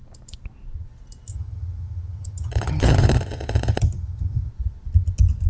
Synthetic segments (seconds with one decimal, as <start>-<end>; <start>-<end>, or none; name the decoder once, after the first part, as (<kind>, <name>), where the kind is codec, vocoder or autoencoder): 1.3-4.5 (vocoder, HiFi-GAN)